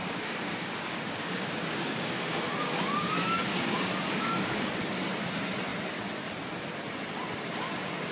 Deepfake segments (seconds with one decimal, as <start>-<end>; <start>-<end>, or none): 0.0-4.7